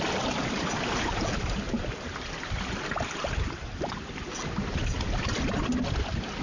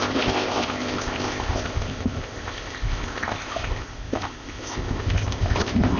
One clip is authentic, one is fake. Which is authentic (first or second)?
first